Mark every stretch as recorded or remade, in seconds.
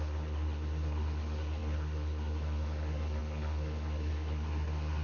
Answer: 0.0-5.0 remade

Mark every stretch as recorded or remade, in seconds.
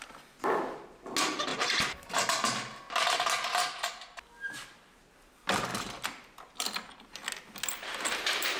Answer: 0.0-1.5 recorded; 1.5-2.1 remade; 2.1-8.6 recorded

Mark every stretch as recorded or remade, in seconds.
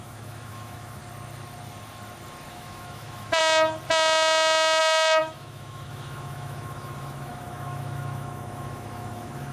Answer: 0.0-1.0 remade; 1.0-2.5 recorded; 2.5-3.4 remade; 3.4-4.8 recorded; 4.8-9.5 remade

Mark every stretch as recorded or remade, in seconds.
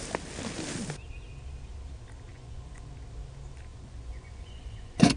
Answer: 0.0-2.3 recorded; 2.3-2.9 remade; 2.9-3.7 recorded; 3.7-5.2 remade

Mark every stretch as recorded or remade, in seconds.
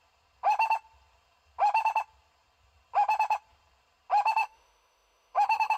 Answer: 0.0-4.4 recorded; 4.4-5.8 remade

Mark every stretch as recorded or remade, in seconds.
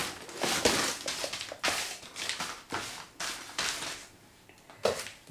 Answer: 0.0-5.3 recorded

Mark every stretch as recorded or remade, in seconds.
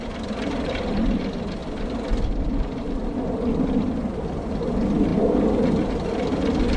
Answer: 0.0-6.8 recorded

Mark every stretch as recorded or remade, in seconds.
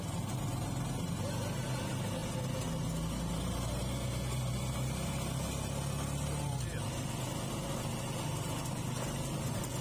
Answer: 0.0-9.8 recorded